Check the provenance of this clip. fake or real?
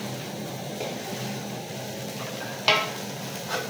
real